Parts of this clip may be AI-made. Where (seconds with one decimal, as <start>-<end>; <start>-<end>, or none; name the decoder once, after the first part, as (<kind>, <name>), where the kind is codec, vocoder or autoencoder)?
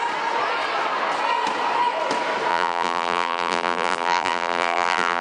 2.5-5.2 (vocoder, BigVGAN v2)